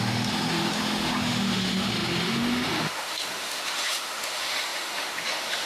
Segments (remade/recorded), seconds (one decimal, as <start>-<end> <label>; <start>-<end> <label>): 0.0-5.7 remade